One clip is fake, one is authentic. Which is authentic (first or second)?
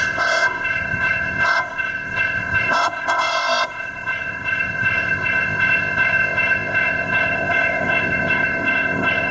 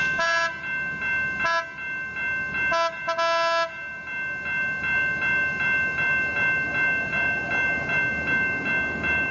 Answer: second